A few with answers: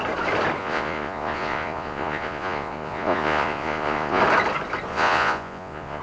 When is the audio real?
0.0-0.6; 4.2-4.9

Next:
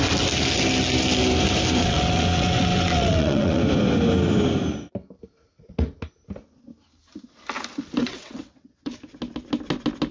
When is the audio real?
0.0-1.8; 3.6-8.0; 8.9-10.1

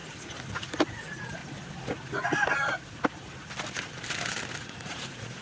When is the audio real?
0.0-0.9; 1.4-4.6

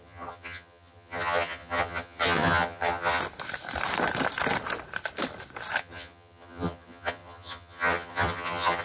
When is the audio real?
3.2-5.8

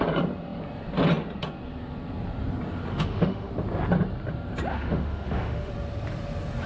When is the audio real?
0.0-2.9; 3.5-4.7; 5.7-6.7